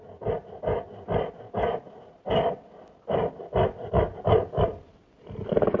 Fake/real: real